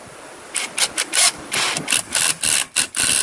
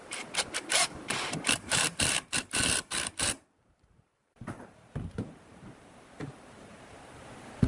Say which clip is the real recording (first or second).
first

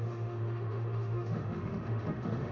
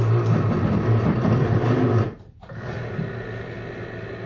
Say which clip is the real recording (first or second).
second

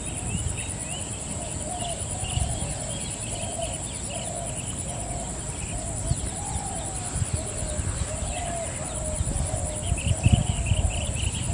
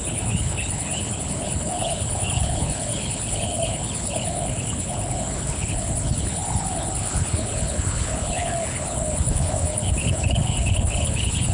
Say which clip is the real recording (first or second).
first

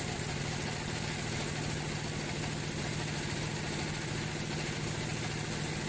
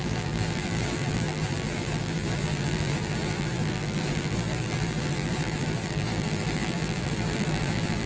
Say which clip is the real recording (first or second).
first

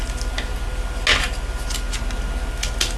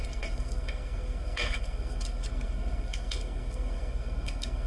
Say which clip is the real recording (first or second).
first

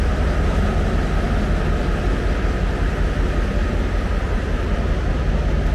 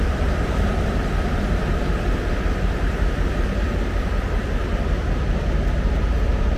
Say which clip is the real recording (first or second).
first